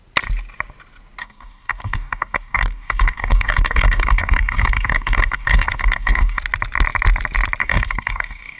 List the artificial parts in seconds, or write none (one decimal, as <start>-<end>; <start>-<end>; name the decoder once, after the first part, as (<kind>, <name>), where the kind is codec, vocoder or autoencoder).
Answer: 1.2-6.4 (codec, DAC); 7.6-8.6